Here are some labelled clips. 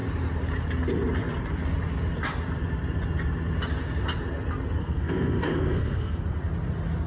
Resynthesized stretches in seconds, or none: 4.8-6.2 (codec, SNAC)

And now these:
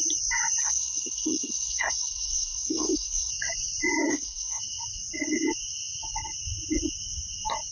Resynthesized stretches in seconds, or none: 0.6-3.3 (codec, SNAC); 4.1-4.6

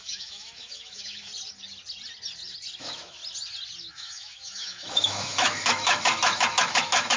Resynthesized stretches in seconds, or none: 0.0-1.3 (autoencoder, DAC-VAE); 2.8-3.2; 3.9-7.2